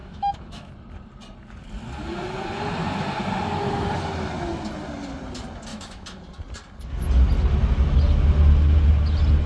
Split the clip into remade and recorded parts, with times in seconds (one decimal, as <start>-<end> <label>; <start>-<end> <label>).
0.0-0.7 remade; 0.7-5.7 recorded; 5.7-6.2 remade; 6.2-9.5 recorded